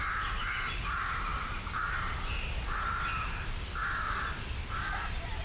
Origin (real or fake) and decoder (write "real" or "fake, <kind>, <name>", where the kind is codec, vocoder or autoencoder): real